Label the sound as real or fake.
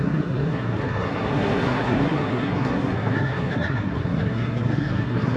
fake